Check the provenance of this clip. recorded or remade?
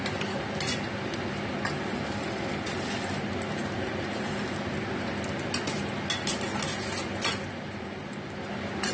recorded